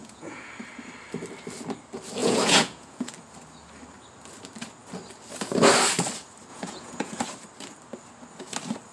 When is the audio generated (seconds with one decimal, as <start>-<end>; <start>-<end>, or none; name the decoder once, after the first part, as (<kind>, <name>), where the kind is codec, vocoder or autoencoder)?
0.0-0.5 (vocoder, Vocos); 2.2-3.1; 6.5-7.2